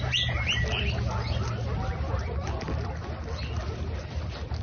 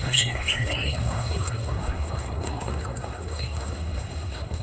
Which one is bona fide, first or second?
first